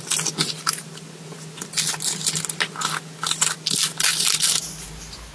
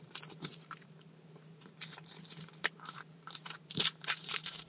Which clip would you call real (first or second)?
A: first